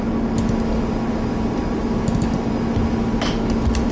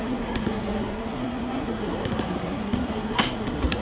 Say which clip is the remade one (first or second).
second